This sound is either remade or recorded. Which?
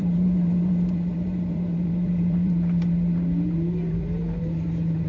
remade